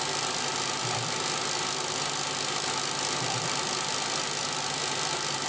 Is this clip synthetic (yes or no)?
no